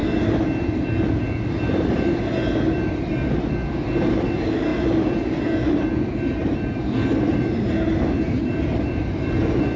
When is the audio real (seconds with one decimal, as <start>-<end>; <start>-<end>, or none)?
0.0-9.8